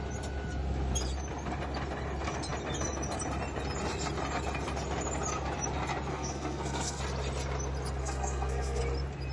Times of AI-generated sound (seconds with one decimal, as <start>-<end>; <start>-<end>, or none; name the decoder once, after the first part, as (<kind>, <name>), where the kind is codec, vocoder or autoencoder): 6.1-7.0 (codec, SNAC); 8.0-8.8